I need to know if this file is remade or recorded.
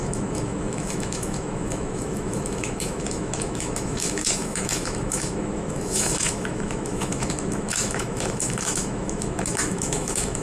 remade